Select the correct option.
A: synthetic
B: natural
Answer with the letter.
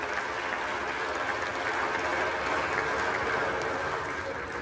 B